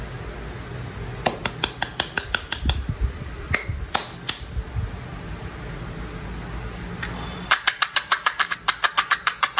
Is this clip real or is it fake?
real